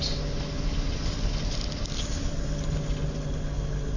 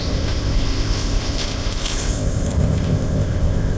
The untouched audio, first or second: first